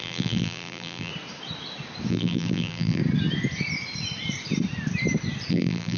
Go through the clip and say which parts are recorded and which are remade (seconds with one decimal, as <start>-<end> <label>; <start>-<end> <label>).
0.0-1.1 remade; 1.1-2.1 recorded; 2.1-3.0 remade; 3.0-5.5 recorded; 5.5-6.0 remade